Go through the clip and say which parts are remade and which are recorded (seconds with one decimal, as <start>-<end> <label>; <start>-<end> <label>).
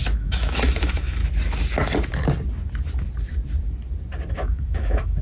0.0-1.2 remade; 1.2-4.3 recorded; 4.3-5.2 remade